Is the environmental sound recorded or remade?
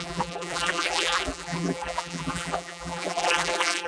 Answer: remade